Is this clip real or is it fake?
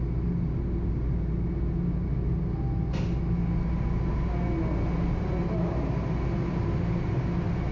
real